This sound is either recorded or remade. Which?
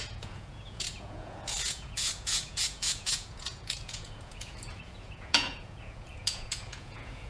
remade